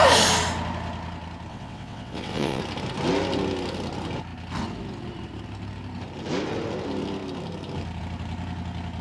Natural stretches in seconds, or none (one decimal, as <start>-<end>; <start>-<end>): 0.0-1.5; 2.6-9.0